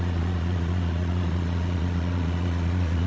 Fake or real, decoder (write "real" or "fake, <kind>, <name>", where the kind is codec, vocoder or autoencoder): fake, vocoder, Vocos